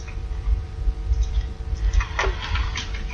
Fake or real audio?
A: fake